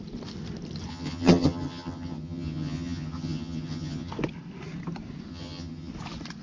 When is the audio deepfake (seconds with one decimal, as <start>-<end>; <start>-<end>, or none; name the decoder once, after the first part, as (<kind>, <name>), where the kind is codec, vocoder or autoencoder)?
0.9-4.1 (vocoder, HiFi-GAN); 5.3-5.9